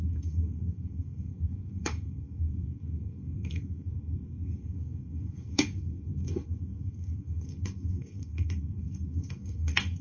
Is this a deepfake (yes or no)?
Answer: yes